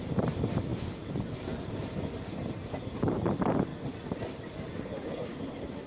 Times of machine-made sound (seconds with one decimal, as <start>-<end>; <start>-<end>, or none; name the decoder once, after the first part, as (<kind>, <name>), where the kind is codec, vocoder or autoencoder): 0.0-3.7 (vocoder, BigVGAN v2); 4.2-5.9